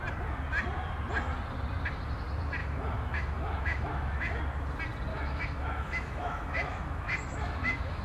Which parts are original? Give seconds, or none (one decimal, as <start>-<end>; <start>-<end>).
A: 0.0-2.6; 4.4-5.1